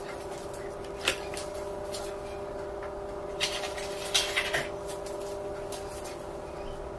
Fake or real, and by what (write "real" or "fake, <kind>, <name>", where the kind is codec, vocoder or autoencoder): real